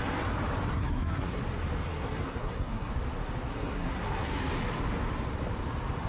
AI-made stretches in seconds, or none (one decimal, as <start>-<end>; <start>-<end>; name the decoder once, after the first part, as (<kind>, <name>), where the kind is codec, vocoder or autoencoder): 0.7-1.4 (codec, SNAC); 1.9-2.9; 3.5-4.4